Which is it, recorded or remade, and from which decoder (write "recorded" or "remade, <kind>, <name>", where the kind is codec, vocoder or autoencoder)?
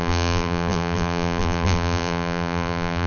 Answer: remade, vocoder, BigVGAN v2